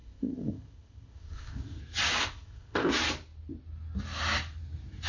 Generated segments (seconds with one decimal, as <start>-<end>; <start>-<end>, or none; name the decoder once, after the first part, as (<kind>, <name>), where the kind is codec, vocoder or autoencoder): 0.0-1.8 (codec, ZipCodec); 2.2-2.9